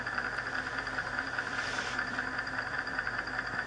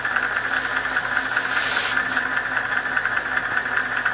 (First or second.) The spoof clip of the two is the first